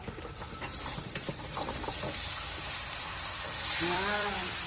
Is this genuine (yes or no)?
no